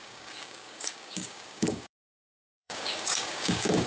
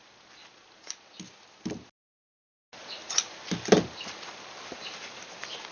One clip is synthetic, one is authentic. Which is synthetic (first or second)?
first